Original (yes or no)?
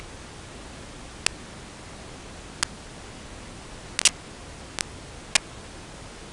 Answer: yes